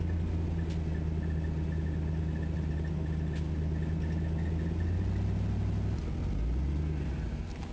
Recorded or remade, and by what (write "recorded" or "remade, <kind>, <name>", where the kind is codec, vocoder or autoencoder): recorded